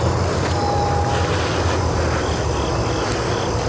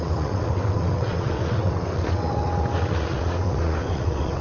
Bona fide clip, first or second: first